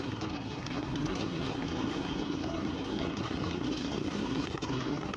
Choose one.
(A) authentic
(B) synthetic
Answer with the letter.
B